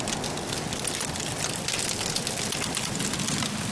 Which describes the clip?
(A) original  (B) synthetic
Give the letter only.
A